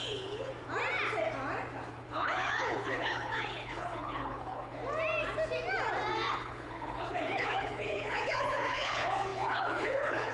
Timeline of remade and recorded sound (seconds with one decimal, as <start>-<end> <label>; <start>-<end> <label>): 0.0-0.5 remade; 0.5-1.9 recorded; 1.9-4.8 remade; 4.8-6.3 recorded; 6.3-10.3 remade